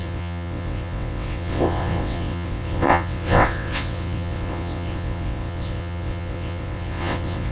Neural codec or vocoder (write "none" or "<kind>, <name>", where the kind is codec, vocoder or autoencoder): vocoder, WaveNeXt